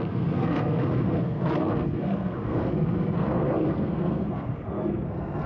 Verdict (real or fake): fake